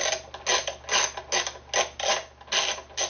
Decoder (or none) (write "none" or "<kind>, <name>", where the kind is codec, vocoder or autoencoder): none